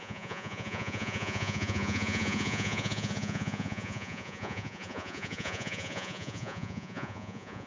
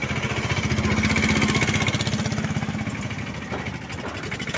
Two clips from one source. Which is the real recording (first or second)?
second